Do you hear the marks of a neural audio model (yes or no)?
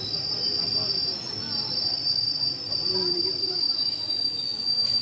no